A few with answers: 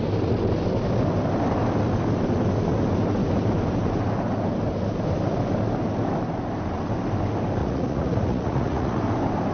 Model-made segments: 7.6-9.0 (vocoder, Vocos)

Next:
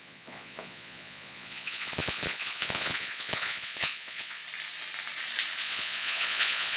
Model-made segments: 0.0-4.4 (vocoder, Vocos); 5.6-6.8

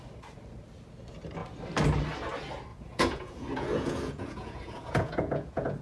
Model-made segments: 2.7-5.8 (vocoder, Vocos)

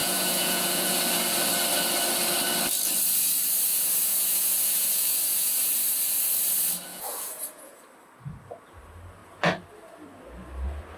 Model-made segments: 0.0-1.0 (vocoder, Vocos); 3.7-5.7; 6.9-7.8

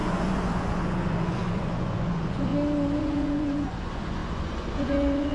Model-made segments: 0.0-2.5 (vocoder, Vocos); 3.0-5.3

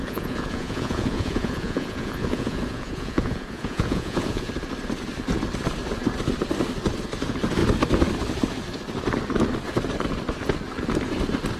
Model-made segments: 0.0-4.5 (vocoder, Vocos)

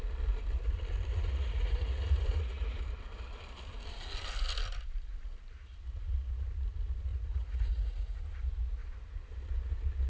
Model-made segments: 1.1-2.8 (vocoder, Vocos); 7.1-8.2

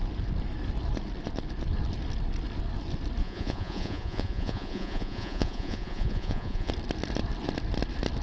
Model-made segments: 3.2-6.7 (vocoder, Vocos)